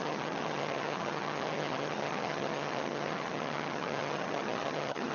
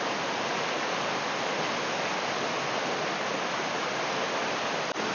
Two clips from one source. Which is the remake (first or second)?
first